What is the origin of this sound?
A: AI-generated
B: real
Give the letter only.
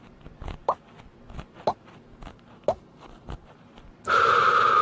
B